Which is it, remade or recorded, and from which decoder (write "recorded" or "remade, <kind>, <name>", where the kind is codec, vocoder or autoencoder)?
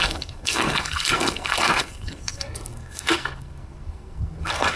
remade, codec, SNAC